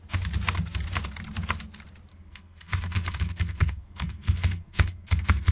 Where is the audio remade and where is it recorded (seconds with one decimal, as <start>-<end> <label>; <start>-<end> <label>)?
0.0-2.1 recorded; 2.1-5.5 remade